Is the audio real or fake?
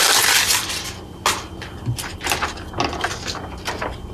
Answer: real